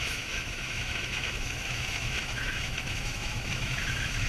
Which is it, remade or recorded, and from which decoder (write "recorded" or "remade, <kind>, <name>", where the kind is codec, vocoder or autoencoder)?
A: remade, autoencoder, DAC-VAE